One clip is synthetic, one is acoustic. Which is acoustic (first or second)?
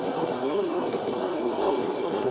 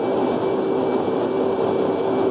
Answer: second